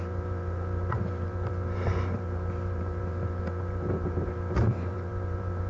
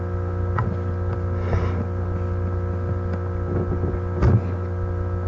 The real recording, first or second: second